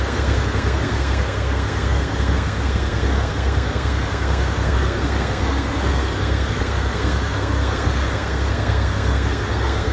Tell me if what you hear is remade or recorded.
remade